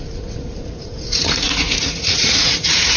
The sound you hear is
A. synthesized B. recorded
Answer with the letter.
A